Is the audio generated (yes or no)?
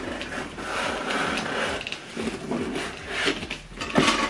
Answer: no